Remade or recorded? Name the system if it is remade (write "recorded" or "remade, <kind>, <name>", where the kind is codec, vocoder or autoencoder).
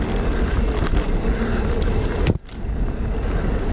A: recorded